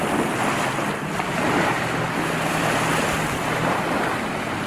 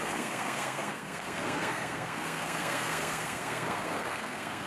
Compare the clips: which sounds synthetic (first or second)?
second